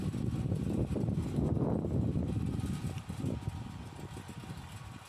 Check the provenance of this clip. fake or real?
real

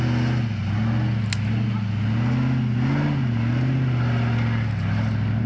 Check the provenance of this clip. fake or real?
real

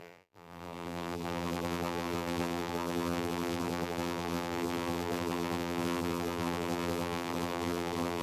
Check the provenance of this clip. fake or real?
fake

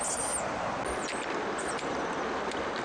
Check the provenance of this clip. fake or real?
real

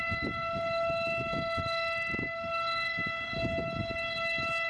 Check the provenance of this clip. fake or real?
real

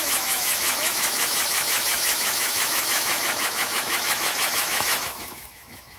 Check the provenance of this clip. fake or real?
fake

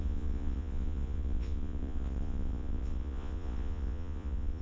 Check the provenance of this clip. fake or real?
fake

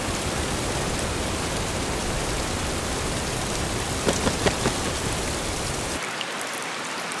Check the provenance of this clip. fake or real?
fake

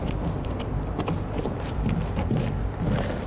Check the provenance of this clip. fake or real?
real